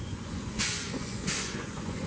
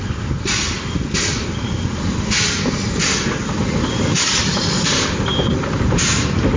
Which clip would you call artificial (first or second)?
first